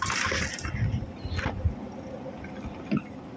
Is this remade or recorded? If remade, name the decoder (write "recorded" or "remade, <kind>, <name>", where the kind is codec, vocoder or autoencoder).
recorded